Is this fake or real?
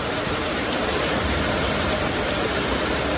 fake